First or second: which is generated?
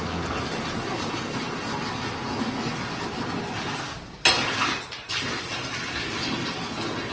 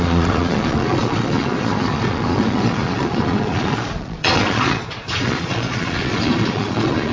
second